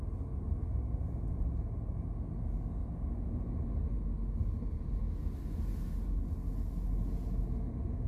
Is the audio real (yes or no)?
yes